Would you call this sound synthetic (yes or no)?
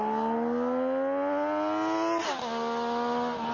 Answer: no